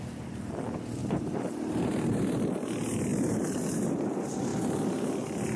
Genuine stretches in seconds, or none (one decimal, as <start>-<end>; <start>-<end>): 0.0-1.0; 1.9-3.1; 3.6-5.6